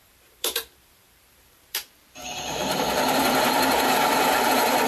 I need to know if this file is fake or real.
fake